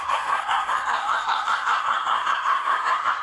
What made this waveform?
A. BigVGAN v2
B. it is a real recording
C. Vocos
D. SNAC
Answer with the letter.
D